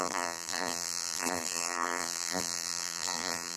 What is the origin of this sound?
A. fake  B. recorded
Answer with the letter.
A